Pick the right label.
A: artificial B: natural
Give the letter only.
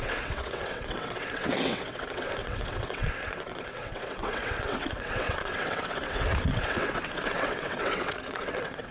A